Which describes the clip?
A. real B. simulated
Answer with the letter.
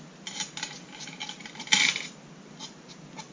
A